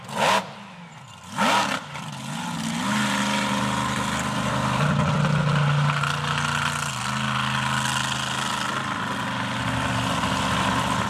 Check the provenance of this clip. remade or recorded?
recorded